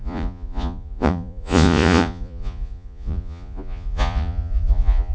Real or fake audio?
fake